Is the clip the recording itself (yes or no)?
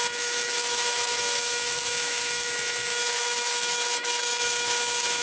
no